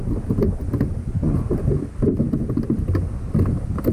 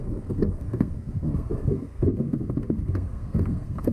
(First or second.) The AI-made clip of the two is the second